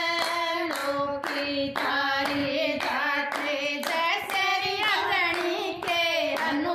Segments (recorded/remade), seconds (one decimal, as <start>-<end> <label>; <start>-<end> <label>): 0.0-6.7 recorded